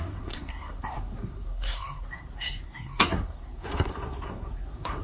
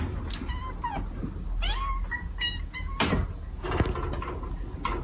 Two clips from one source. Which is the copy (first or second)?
first